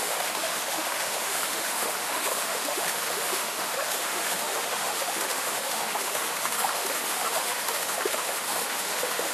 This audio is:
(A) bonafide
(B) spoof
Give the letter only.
B